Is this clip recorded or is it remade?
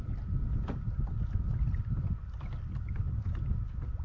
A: recorded